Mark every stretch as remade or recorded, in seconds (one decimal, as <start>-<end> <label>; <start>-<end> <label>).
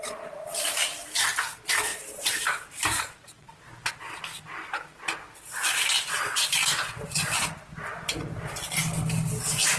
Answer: 0.0-1.9 recorded; 1.9-4.0 remade; 4.0-9.8 recorded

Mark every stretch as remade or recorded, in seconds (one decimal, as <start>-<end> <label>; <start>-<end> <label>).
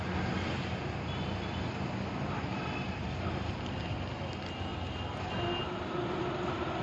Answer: 0.0-6.8 recorded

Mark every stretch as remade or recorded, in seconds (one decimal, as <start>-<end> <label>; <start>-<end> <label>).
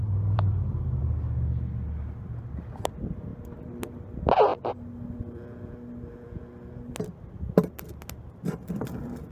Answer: 0.0-1.0 remade; 1.0-9.3 recorded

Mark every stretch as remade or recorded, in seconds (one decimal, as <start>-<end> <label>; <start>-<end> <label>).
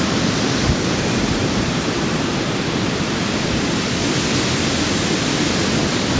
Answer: 0.0-1.4 recorded; 1.4-2.3 remade; 2.3-6.2 recorded